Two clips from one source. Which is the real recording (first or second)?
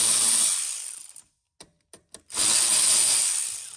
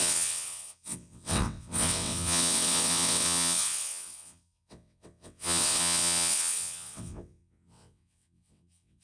first